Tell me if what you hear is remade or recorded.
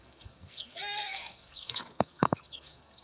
remade